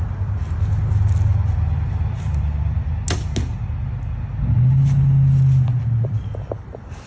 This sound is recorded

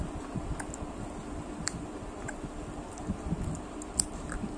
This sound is recorded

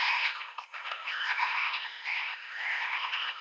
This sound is remade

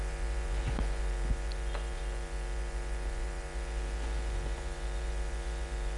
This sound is remade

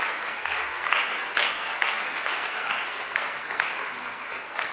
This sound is remade